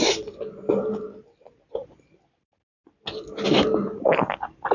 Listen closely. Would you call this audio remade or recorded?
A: recorded